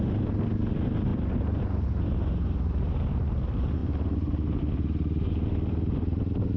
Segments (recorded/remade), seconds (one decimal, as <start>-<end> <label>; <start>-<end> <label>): 0.0-6.6 recorded